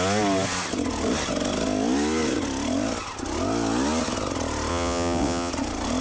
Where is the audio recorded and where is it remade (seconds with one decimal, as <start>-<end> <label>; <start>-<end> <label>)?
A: 0.0-4.7 recorded; 4.7-5.5 remade; 5.5-6.0 recorded